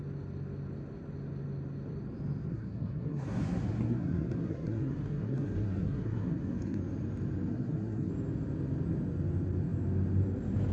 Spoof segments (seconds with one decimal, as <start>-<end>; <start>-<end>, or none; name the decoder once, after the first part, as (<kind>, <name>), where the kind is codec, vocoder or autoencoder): 2.5-6.8 (codec, SNAC); 7.5-8.1